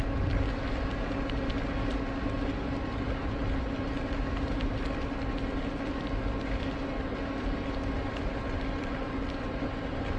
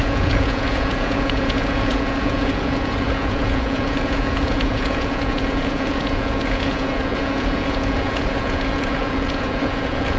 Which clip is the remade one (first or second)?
second